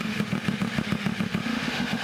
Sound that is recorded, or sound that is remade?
remade